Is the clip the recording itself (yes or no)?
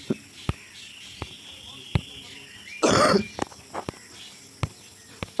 yes